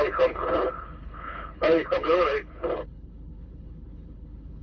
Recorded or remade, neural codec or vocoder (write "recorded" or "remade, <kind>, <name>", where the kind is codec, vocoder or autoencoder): remade, codec, HILCodec